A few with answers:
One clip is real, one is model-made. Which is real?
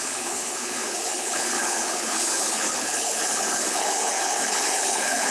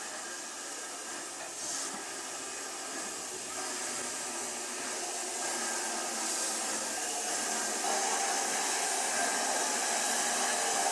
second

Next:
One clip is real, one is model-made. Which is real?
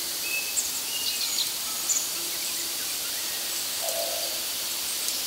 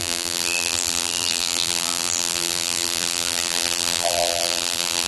first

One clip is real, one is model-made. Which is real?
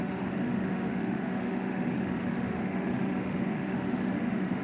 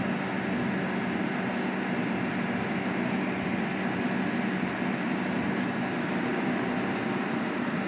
second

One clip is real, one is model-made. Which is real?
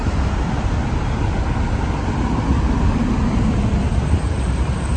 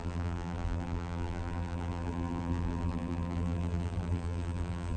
first